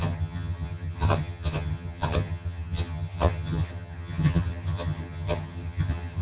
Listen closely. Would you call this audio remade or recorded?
remade